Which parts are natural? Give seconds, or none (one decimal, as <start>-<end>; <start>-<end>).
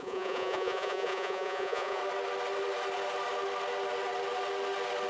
2.0-5.1